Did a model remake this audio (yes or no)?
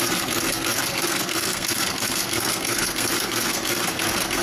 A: yes